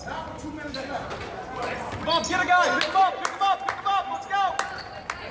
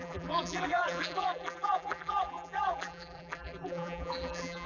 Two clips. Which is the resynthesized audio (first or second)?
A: second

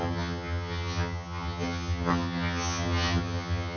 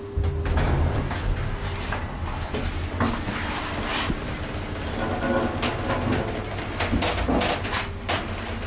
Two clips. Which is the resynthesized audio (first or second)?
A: first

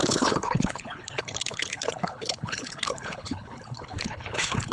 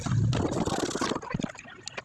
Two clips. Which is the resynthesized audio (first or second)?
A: first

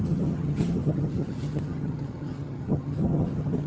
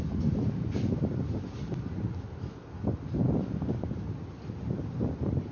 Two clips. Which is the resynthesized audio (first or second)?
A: first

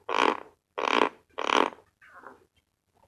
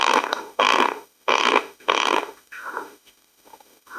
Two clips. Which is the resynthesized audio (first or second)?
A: second